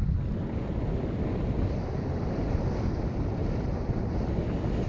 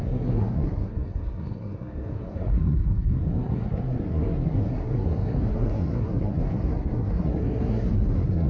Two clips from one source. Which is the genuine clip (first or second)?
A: first